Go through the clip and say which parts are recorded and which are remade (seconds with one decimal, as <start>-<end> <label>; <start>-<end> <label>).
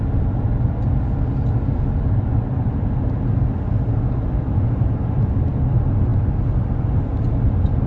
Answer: 0.0-7.9 recorded